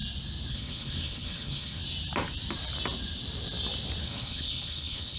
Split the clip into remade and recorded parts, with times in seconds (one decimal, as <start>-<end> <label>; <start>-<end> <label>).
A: 0.0-0.5 recorded; 0.5-1.8 remade; 1.8-4.0 recorded; 4.0-5.2 remade